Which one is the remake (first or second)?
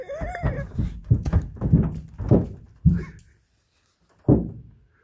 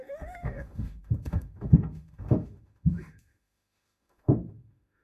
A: second